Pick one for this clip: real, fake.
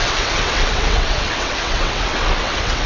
fake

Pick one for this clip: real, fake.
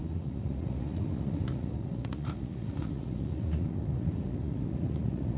fake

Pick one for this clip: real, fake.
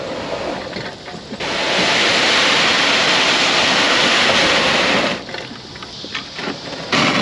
real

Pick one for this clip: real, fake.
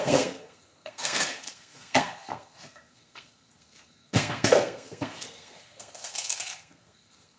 fake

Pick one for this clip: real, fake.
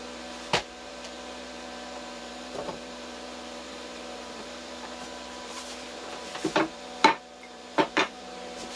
fake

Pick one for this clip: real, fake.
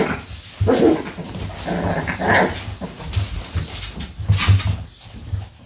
real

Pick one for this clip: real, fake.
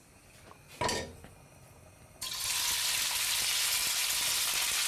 real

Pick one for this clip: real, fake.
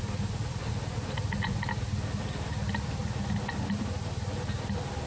real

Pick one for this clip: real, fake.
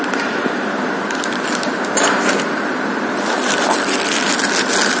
real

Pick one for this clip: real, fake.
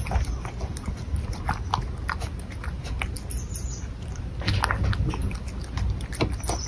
real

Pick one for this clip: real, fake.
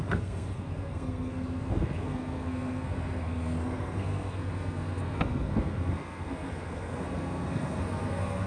fake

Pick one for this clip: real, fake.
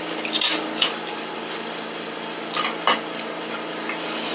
real